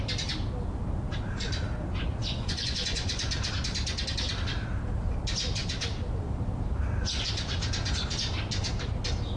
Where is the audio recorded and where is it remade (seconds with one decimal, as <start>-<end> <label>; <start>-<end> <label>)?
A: 0.0-2.2 recorded; 2.2-3.3 remade; 3.3-9.4 recorded

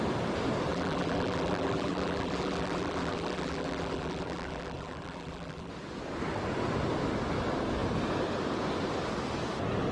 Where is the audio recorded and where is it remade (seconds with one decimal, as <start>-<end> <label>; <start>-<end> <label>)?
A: 0.0-0.7 recorded; 0.7-5.7 remade; 5.7-9.9 recorded

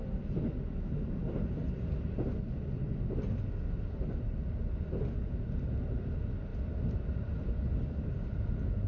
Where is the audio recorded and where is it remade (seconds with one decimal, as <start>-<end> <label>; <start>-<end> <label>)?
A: 0.0-8.9 recorded